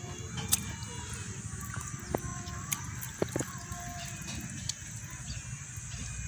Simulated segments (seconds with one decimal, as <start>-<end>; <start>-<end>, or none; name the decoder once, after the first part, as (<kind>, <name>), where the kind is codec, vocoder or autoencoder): none

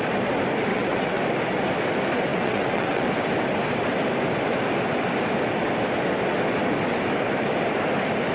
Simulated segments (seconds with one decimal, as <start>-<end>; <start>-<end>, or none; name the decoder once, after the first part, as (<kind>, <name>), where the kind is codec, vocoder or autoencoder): 0.7-1.2 (vocoder, WaveNeXt); 2.3-3.1

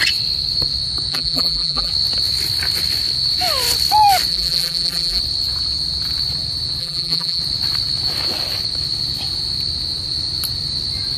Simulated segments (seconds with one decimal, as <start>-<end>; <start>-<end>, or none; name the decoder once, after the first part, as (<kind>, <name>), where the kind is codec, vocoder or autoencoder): 1.1-1.9 (vocoder, BigVGAN v2); 4.3-5.2; 6.8-7.4